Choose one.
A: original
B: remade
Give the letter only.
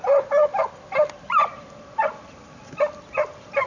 A